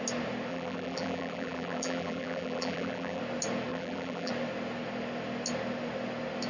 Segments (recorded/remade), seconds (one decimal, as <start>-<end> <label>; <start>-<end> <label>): 0.0-0.5 recorded; 0.5-3.2 remade; 3.2-3.7 recorded; 3.7-4.3 remade; 4.3-6.5 recorded